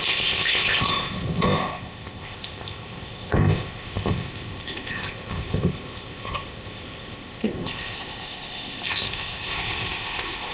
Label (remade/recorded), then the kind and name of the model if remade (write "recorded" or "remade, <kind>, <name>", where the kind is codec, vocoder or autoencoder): remade, codec, ZipCodec